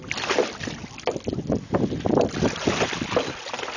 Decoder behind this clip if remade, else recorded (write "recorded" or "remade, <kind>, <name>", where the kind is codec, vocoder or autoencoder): recorded